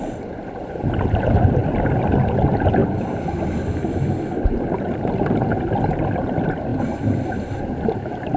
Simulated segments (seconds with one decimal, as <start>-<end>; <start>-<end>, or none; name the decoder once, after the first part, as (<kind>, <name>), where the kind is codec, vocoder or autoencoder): none